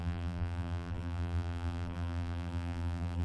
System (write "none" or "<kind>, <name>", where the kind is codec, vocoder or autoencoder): vocoder, BigVGAN v2